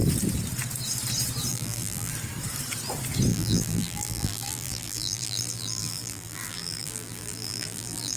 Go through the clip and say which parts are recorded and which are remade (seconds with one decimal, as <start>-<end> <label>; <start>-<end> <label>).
0.0-1.5 recorded; 1.5-2.1 remade; 2.1-3.3 recorded; 3.3-8.2 remade